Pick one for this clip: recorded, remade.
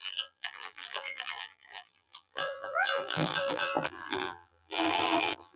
remade